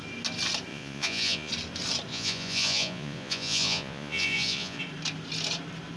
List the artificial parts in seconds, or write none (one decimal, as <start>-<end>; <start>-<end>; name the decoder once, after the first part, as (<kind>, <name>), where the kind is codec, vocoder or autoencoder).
0.7-1.5 (vocoder, Vocos); 2.1-4.8